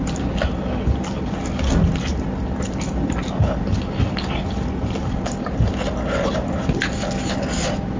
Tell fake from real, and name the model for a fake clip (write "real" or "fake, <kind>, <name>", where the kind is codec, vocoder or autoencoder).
real